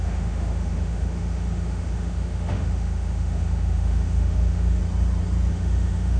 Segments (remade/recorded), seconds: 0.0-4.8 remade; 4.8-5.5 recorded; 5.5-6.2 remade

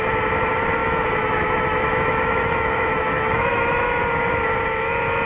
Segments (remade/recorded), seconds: 0.0-0.8 recorded; 0.8-4.0 remade; 4.0-5.3 recorded

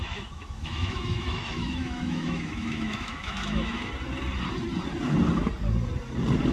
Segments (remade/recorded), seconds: 0.0-3.9 remade; 3.9-6.5 recorded